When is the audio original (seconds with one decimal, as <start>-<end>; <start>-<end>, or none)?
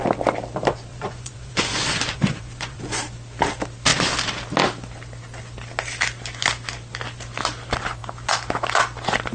0.0-0.9; 3.0-9.3